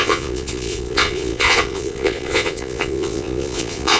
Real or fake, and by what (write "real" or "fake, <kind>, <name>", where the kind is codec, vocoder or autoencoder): fake, vocoder, Vocos